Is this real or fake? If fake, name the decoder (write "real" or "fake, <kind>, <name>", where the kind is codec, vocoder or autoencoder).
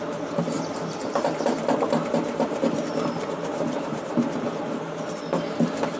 fake, vocoder, BigVGAN v2